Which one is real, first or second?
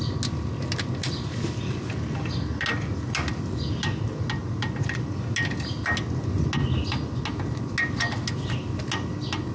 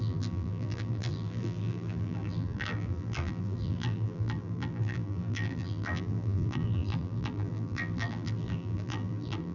first